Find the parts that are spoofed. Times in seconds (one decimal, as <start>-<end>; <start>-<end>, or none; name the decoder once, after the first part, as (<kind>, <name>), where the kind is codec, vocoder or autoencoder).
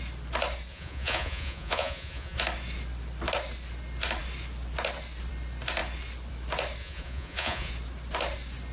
0.7-2.4 (vocoder, Vocos); 6.8-7.7